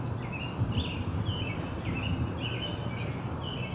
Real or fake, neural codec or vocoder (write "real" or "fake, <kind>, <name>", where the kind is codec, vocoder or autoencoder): real